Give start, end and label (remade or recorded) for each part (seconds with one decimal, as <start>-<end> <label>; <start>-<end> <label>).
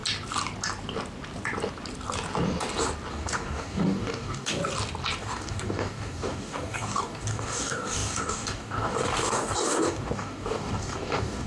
0.0-3.1 recorded; 3.1-4.6 remade; 4.6-5.2 recorded; 5.2-11.5 remade